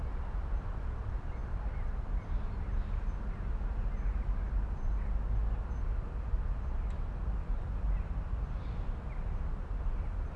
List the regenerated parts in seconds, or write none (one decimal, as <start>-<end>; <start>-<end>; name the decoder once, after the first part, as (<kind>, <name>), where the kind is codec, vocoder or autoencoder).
1.4-2.4 (vocoder, BigVGAN v2)